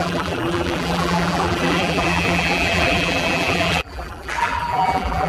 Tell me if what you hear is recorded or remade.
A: remade